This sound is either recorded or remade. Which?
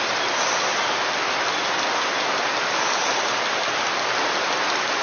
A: recorded